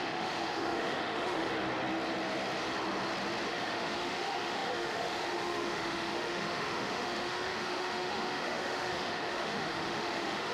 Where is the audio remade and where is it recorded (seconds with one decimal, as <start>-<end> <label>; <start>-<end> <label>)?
0.0-1.5 remade; 1.5-3.5 recorded; 3.5-10.5 remade